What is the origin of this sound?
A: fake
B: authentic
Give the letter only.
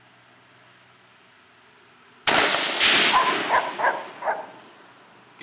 B